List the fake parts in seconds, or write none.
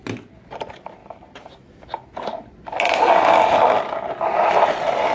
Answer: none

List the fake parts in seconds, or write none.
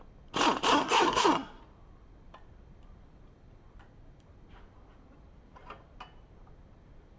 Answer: 0.7-1.6 (codec, SNAC)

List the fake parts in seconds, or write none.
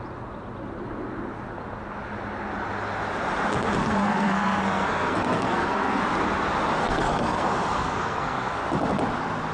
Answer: 3.8-6.0 (codec, SNAC); 6.8-8.7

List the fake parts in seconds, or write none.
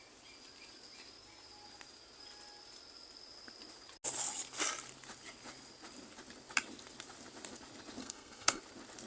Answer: 8.0-8.6 (codec, SNAC)